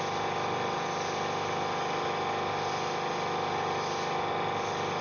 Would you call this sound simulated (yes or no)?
no